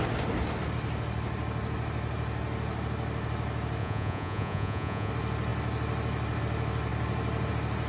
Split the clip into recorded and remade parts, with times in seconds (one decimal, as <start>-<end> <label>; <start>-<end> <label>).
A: 0.0-3.8 recorded; 3.8-5.1 remade; 5.1-7.9 recorded